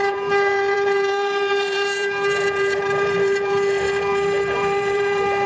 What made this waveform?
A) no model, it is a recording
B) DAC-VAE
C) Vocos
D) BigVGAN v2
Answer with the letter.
D